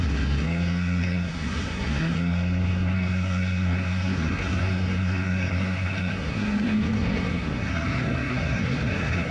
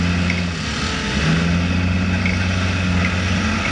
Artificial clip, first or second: first